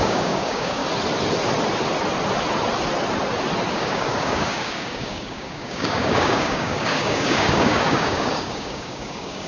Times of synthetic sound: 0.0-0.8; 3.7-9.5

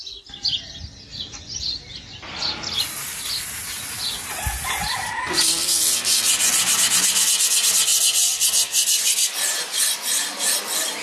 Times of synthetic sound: none

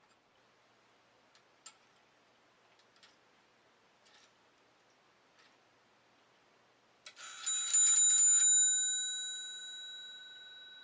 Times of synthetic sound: none

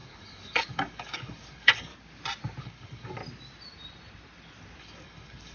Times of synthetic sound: 0.0-1.9; 2.6-3.2; 4.8-5.5

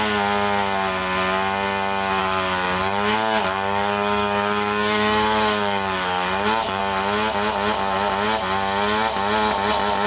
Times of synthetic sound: 2.2-6.8

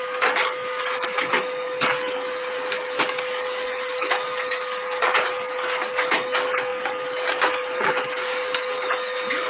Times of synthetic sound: 0.0-9.5

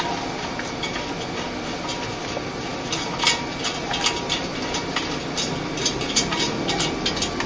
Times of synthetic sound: none

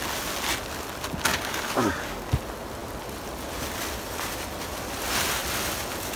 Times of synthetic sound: 1.3-2.3